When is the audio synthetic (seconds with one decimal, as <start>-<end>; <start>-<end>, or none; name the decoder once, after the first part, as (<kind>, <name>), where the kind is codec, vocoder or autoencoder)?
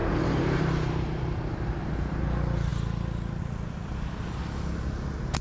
0.0-2.2 (vocoder, BigVGAN v2)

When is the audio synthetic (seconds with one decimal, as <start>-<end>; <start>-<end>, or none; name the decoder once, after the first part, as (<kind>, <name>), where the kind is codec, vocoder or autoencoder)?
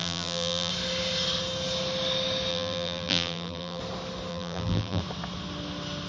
0.0-0.7 (vocoder, BigVGAN v2); 2.5-3.8; 4.3-5.0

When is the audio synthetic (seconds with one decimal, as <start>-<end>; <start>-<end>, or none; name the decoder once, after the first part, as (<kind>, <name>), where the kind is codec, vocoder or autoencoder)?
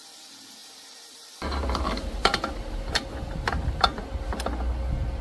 0.6-2.7 (vocoder, BigVGAN v2)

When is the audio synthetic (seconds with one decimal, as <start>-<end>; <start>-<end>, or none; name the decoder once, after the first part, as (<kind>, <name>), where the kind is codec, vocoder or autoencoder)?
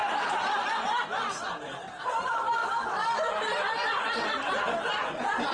0.7-2.6 (vocoder, BigVGAN v2); 3.7-5.5